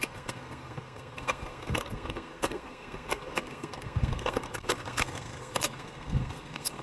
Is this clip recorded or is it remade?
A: remade